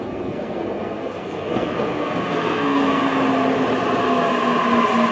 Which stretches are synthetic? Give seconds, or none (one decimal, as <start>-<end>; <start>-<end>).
0.0-3.0